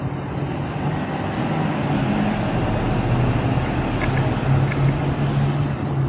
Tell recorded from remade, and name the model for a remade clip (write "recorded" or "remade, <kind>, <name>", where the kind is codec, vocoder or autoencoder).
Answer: recorded